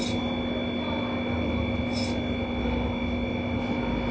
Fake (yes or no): no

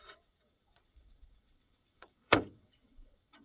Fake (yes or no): yes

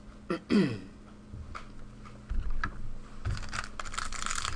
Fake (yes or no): no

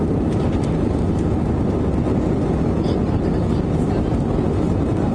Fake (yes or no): no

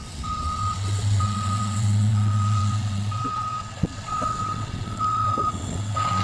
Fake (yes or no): yes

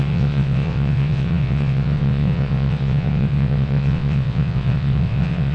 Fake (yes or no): yes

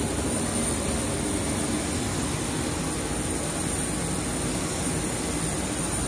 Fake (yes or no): no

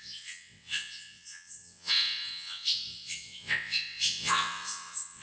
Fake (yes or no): yes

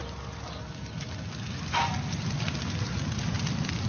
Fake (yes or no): no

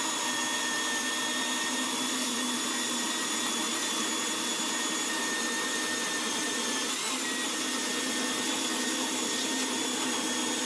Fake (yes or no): no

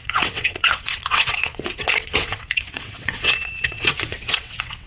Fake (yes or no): yes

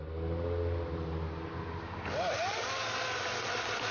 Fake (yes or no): no